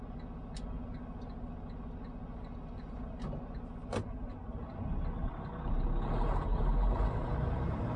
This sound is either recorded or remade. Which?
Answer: recorded